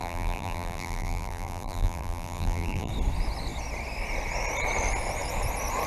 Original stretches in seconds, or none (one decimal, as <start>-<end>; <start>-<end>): 2.9-5.9